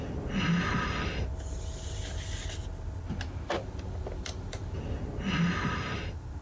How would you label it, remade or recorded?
recorded